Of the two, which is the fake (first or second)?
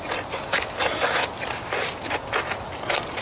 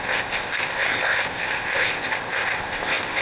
second